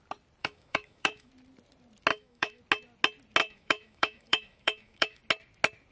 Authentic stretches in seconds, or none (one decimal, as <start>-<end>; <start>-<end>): 0.0-0.4; 1.3-2.1; 2.6-3.4; 5.2-5.9